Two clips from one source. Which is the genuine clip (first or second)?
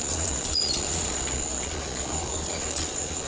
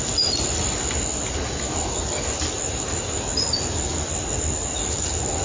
second